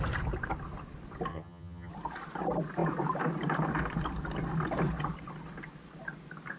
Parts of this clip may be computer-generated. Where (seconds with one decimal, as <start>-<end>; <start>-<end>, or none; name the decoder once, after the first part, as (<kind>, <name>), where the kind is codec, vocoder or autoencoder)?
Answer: 1.3-1.9 (vocoder, HiFi-GAN)